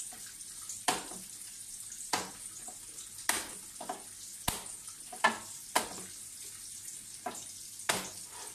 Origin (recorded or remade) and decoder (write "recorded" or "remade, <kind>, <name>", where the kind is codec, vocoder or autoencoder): recorded